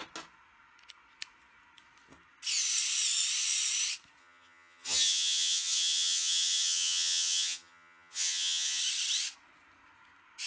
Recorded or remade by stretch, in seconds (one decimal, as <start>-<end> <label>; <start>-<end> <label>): 0.0-4.2 recorded; 4.2-8.8 remade; 8.8-10.5 recorded